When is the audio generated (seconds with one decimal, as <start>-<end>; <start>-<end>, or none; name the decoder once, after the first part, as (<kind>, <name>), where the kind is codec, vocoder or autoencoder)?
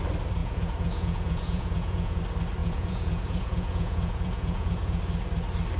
0.4-2.2 (vocoder, Vocos); 2.6-5.0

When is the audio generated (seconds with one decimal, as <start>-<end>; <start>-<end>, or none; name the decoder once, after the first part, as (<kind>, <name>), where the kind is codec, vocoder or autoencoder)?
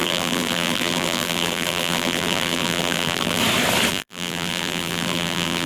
0.0-3.4 (vocoder, BigVGAN v2); 3.9-5.7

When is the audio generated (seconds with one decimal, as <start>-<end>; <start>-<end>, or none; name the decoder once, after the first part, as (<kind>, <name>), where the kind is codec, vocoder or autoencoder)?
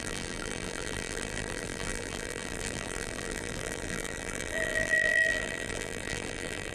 0.0-6.7 (vocoder, BigVGAN v2)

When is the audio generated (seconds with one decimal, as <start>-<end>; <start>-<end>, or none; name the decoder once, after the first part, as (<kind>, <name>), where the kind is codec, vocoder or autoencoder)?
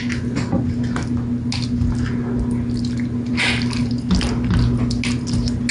none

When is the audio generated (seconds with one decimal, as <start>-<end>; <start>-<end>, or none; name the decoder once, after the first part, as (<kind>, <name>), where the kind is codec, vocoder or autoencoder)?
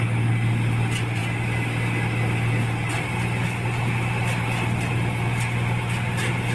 none